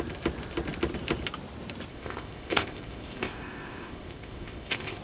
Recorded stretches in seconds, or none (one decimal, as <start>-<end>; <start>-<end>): 0.0-1.9